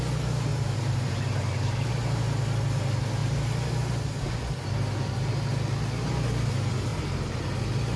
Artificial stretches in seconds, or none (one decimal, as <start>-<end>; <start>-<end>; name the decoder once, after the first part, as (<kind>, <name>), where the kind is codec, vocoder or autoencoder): 0.5-1.9 (vocoder, BigVGAN v2); 6.9-7.5